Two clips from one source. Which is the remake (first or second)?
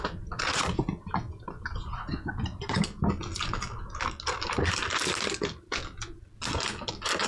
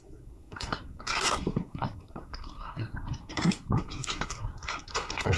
second